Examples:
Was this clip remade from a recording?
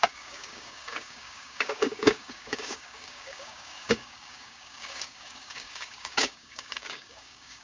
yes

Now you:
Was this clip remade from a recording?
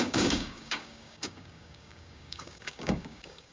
yes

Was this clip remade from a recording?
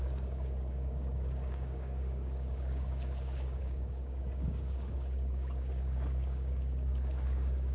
yes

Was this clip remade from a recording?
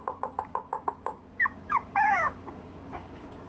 yes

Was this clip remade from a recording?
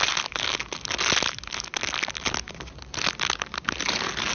no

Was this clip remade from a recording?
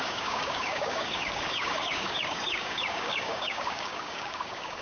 yes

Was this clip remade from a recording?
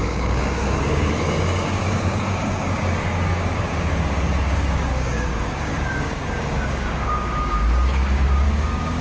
yes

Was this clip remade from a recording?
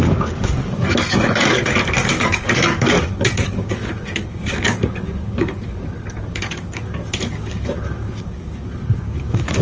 yes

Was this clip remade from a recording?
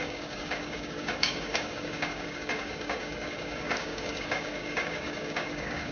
yes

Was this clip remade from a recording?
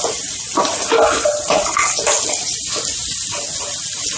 no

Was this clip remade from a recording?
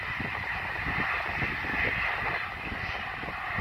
no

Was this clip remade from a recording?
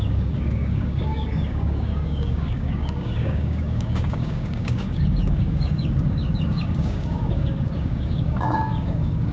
yes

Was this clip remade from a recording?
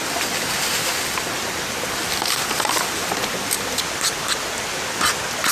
no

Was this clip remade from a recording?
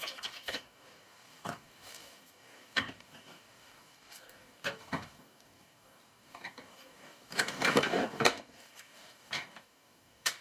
yes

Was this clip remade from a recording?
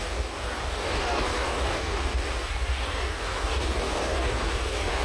yes